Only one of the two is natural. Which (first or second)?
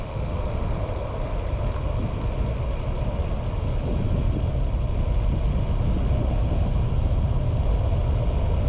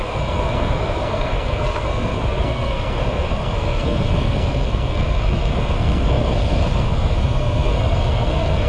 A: first